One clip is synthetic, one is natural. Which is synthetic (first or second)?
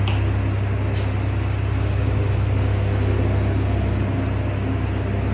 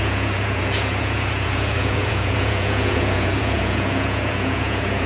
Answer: second